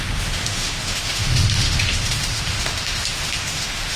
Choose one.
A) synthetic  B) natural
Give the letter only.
A